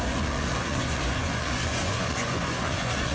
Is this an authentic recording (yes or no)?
no